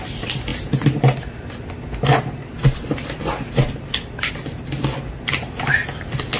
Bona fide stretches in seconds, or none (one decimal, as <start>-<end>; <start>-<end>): 0.0-6.4